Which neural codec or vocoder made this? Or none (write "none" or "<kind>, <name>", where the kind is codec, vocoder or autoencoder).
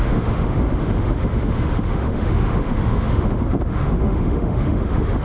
autoencoder, DAC-VAE